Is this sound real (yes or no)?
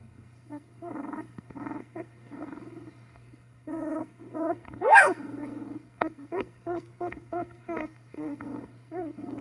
no